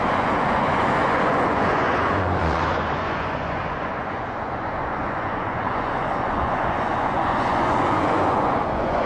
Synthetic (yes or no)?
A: yes